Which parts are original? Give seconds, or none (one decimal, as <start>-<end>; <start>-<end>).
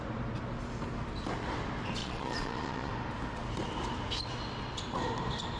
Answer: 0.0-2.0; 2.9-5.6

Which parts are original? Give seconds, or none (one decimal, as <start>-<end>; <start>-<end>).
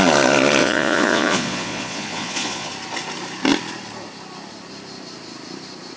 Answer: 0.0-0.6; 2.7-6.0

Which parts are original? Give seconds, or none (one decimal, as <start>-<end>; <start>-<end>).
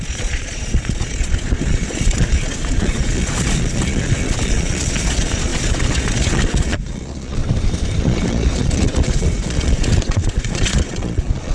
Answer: 7.4-8.0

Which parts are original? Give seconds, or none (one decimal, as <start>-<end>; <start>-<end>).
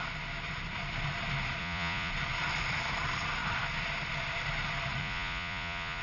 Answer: 0.0-1.6; 2.1-5.0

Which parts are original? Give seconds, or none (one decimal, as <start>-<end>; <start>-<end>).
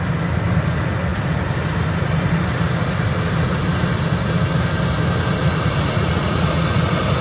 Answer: 0.0-5.4; 6.8-7.2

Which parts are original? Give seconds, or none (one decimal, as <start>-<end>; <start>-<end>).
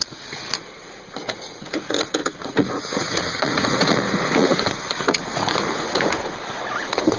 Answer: none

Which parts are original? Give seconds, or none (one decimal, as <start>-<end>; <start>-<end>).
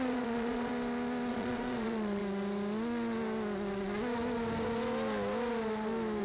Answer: 0.7-1.3; 2.2-6.2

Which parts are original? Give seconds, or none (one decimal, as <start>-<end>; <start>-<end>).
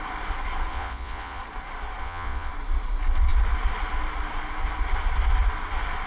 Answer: 0.0-0.7; 1.4-2.0; 2.5-6.1